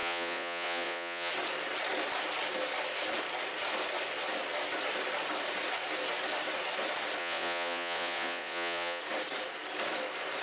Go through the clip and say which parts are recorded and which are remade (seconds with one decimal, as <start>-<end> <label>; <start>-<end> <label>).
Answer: 0.0-1.3 remade; 1.3-7.2 recorded; 7.2-9.0 remade; 9.0-10.4 recorded